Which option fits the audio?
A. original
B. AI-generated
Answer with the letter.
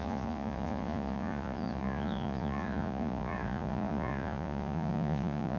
B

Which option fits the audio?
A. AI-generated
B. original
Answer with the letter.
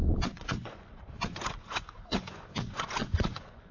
A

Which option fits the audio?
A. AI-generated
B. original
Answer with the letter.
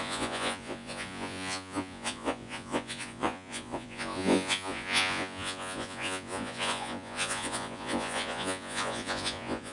A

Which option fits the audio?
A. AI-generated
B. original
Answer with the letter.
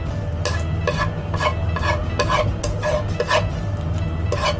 B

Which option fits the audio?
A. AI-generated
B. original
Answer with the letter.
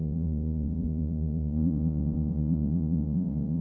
A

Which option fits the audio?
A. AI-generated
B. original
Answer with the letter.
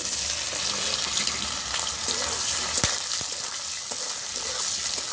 B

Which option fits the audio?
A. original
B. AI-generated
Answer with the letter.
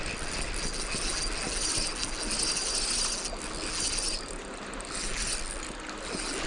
A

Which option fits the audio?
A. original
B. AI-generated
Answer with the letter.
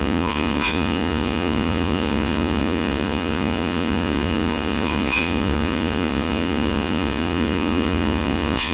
B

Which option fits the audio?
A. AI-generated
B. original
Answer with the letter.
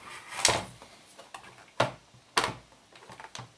B